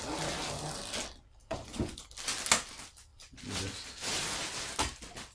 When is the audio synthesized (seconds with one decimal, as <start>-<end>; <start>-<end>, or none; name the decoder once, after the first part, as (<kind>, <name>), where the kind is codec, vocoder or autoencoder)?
1.4-2.0 (vocoder, Vocos)